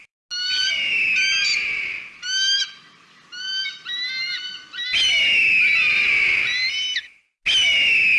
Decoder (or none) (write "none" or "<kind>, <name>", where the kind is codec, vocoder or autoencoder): none